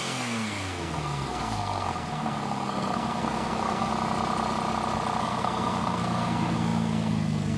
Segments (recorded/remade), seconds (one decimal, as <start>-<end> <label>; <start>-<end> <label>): 0.0-3.9 remade; 3.9-5.2 recorded; 5.2-7.6 remade